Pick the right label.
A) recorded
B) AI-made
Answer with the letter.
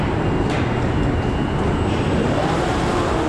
A